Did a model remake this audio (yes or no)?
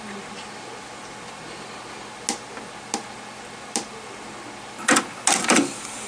no